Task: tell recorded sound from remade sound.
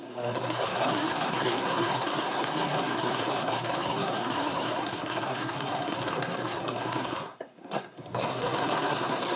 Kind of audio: remade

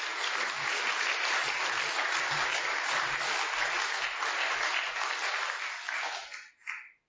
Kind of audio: recorded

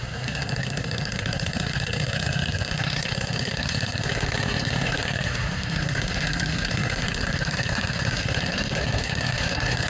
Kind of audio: remade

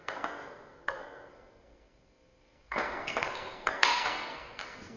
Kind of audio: remade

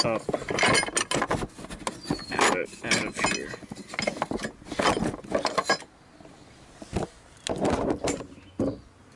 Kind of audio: recorded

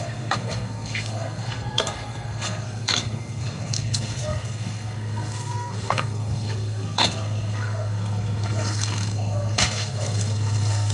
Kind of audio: remade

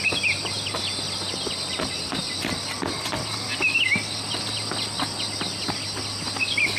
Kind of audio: recorded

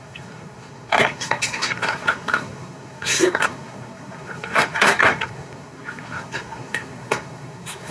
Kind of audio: remade